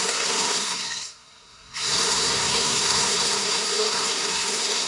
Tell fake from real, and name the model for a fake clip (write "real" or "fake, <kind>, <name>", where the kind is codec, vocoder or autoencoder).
fake, codec, SNAC